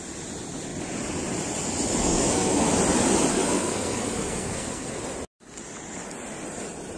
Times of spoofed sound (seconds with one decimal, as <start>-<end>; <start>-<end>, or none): 2.0-2.7; 3.3-5.0